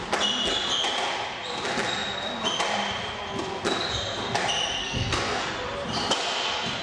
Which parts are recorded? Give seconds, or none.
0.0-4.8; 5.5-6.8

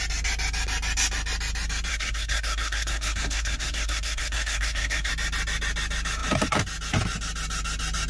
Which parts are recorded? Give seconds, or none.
0.0-1.9; 5.1-8.1

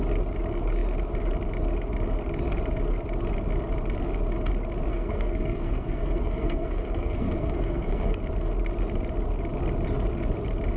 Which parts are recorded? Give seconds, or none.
0.0-4.9; 8.2-10.8

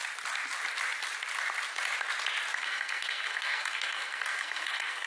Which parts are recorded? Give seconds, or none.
0.0-2.6